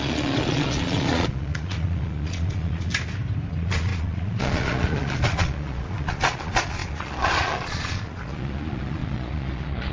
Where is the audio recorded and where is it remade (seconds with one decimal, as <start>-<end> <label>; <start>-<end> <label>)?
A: 0.0-2.9 remade; 2.9-3.5 recorded; 3.5-9.9 remade